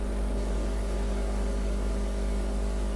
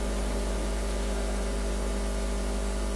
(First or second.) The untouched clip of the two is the second